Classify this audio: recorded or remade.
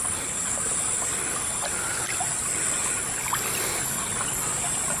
recorded